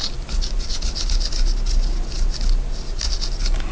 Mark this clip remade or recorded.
recorded